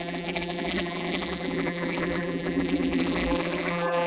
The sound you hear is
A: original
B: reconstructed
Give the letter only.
B